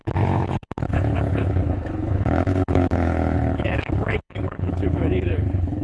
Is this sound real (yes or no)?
no